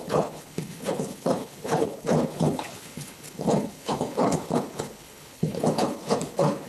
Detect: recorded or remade remade